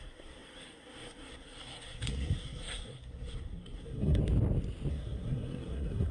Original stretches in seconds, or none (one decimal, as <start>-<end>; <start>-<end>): 4.2-4.9